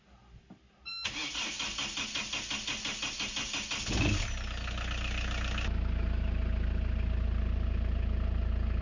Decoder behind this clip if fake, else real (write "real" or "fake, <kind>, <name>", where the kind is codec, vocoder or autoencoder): real